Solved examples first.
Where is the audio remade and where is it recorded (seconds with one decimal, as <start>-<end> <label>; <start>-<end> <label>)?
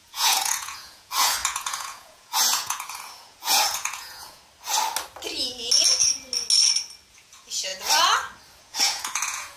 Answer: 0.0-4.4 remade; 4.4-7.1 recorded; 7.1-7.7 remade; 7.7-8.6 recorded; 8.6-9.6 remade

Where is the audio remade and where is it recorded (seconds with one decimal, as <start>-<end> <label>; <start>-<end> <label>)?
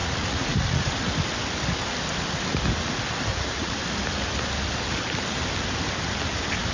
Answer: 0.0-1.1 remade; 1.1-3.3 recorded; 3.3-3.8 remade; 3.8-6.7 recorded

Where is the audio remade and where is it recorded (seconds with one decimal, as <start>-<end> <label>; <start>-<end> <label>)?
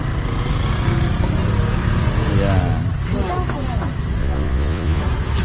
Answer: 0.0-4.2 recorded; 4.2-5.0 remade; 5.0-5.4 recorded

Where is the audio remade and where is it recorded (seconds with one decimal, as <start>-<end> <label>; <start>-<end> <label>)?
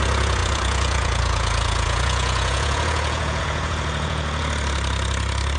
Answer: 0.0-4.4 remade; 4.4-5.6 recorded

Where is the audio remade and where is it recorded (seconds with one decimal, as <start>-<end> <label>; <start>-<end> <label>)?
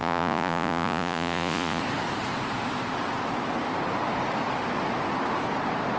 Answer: 0.0-1.8 remade; 1.8-6.0 recorded